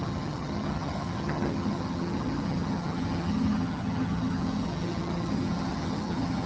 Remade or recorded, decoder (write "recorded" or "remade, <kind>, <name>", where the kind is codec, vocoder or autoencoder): remade, vocoder, HiFi-GAN